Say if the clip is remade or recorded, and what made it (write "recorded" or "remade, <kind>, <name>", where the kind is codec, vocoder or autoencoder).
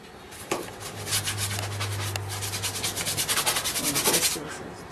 recorded